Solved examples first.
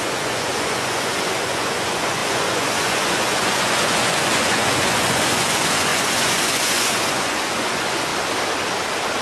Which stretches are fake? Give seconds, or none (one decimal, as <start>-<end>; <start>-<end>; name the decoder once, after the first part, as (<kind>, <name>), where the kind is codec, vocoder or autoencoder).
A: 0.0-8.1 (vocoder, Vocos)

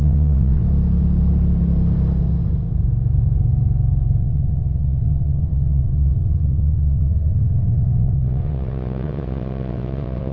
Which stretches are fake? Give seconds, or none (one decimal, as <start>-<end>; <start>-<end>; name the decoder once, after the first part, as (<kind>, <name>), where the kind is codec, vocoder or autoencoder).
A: 0.0-0.6 (vocoder, WaveNeXt); 4.2-10.3

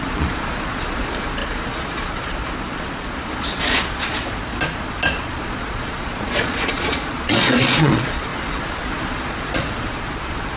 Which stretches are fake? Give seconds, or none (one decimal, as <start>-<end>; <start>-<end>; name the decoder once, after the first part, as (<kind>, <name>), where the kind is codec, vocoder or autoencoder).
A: 0.0-10.6 (vocoder, Vocos)

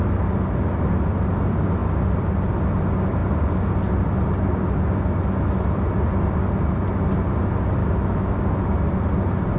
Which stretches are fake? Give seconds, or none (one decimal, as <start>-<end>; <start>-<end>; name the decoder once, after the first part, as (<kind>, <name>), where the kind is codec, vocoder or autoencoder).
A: 7.8-8.4 (autoencoder, DAC-VAE)

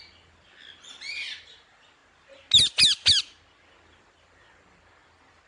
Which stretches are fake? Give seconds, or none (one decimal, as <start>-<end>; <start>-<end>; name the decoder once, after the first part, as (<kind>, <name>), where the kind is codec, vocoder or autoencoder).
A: none

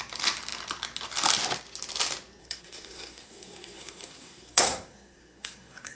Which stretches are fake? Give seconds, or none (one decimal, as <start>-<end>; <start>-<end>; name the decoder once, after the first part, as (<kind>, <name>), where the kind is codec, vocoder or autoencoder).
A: 2.4-6.0 (codec, SNAC)